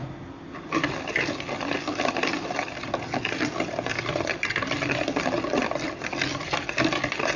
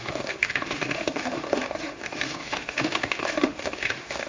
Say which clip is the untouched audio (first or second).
first